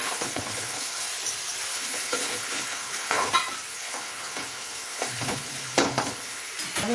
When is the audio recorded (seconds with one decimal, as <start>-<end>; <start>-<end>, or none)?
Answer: 1.1-1.7; 3.3-3.7; 6.5-6.9